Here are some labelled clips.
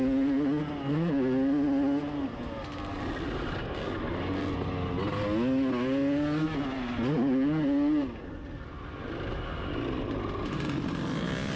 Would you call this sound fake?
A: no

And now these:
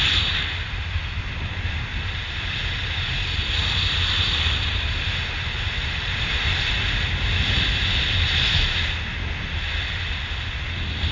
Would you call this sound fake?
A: no